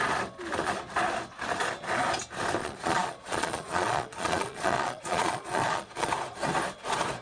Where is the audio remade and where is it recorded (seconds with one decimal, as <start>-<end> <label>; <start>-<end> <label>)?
0.0-2.6 recorded; 2.6-6.1 remade; 6.1-7.2 recorded